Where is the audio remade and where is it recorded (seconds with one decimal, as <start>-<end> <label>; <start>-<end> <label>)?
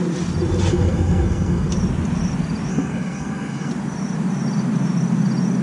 0.0-0.7 recorded; 0.7-1.7 remade; 1.7-2.7 recorded; 2.7-3.7 remade; 3.7-5.6 recorded